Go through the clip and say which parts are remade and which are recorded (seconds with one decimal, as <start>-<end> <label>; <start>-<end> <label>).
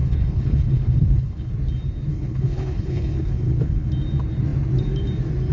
0.0-1.5 remade; 1.5-2.1 recorded; 2.1-3.9 remade; 3.9-5.5 recorded